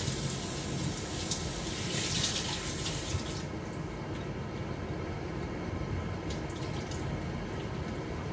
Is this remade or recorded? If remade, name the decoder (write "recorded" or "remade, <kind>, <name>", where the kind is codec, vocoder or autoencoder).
recorded